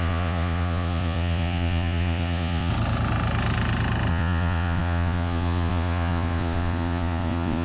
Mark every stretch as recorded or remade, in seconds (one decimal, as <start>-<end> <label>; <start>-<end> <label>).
0.0-2.7 remade; 2.7-4.1 recorded; 4.1-7.6 remade